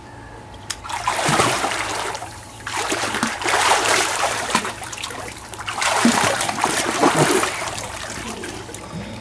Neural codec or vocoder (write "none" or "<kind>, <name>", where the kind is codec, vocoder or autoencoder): vocoder, BigVGAN v2